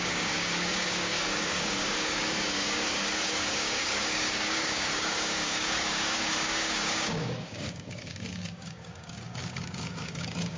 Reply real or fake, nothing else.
fake